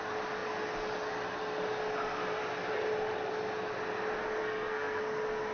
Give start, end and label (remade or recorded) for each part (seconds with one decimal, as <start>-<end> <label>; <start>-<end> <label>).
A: 0.0-4.4 recorded; 4.4-5.0 remade; 5.0-5.5 recorded